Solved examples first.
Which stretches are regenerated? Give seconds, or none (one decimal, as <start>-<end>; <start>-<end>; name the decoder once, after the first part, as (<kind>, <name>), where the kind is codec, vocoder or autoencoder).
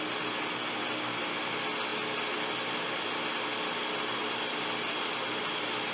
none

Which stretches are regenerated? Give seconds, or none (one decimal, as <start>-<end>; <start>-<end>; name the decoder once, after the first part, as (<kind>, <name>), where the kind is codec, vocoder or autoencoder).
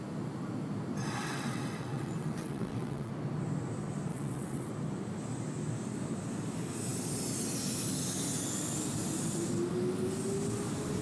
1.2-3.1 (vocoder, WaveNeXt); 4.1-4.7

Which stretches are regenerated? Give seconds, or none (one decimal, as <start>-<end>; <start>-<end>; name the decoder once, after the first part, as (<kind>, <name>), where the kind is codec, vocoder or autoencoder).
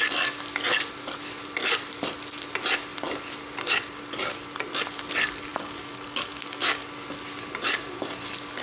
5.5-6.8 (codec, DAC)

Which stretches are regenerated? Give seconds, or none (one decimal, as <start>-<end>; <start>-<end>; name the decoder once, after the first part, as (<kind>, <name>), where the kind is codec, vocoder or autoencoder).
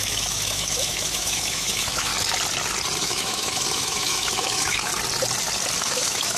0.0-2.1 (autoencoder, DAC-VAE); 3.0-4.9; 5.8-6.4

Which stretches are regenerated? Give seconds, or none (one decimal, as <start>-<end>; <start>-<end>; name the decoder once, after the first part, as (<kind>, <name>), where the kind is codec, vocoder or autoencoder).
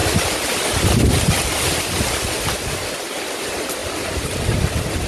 none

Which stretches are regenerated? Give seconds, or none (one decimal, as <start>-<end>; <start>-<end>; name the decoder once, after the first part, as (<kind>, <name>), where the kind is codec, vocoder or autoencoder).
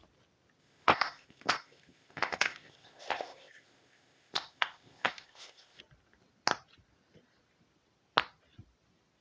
0.6-5.8 (codec, ZipCodec)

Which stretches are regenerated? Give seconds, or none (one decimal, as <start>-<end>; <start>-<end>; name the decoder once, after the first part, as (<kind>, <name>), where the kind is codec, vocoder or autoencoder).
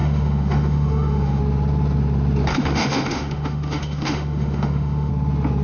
0.0-1.4 (autoencoder, DAC-VAE); 2.5-5.1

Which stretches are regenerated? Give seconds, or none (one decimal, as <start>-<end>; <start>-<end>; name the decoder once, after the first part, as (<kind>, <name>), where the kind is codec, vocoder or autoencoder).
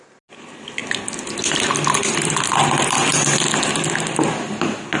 none